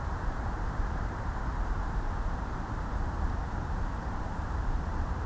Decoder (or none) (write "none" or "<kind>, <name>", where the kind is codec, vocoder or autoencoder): vocoder, BigVGAN v2